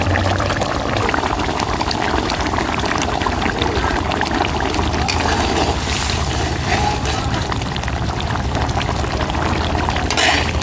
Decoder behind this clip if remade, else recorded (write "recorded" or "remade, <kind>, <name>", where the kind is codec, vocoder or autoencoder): remade, vocoder, BigVGAN v2